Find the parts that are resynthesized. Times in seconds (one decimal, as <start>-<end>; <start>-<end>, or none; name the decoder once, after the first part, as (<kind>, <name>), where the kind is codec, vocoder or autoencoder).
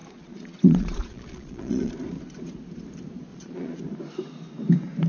0.0-1.9 (vocoder, Vocos); 3.3-3.8